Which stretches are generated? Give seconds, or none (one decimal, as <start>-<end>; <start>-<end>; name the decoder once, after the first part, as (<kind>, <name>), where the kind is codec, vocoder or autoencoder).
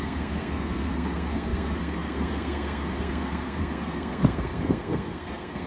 0.0-5.7 (codec, SNAC)